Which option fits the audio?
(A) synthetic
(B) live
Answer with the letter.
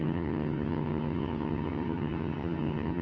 A